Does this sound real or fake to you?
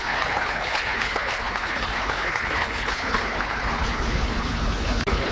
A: fake